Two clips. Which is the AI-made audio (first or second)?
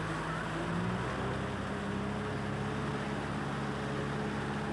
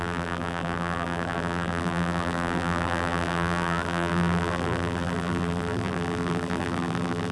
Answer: second